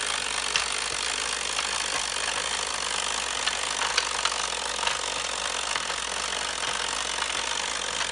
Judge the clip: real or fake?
real